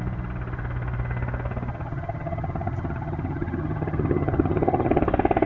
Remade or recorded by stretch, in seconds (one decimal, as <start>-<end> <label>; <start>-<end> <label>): 0.0-1.7 recorded; 1.7-5.0 remade; 5.0-5.5 recorded